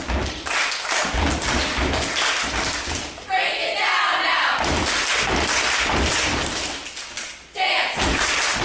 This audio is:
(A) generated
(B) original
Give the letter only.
B